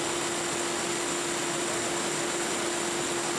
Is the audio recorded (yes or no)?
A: yes